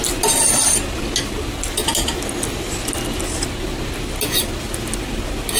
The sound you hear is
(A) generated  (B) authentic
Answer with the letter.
B